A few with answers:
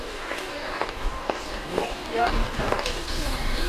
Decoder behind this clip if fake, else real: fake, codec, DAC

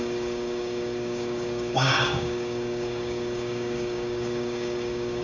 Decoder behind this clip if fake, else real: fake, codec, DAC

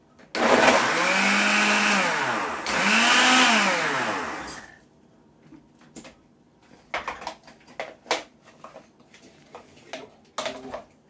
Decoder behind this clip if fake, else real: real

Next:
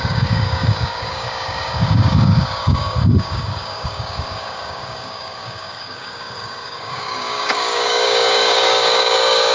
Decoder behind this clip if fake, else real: fake, codec, DAC